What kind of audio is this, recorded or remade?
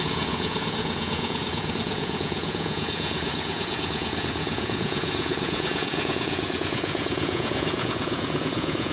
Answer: remade